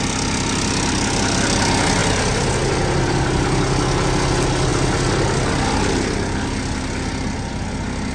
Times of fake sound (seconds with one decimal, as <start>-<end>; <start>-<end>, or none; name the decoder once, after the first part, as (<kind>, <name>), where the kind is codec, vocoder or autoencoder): none